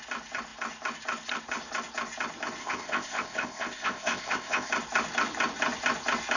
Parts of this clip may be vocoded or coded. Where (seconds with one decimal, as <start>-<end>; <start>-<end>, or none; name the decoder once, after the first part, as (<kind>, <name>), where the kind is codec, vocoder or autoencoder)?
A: 2.6-4.7 (codec, ZipCodec)